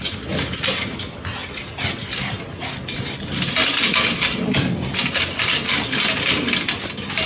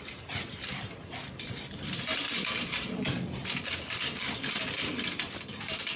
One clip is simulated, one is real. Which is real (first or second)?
first